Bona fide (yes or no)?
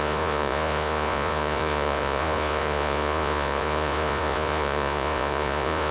no